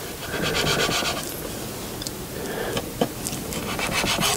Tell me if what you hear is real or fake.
real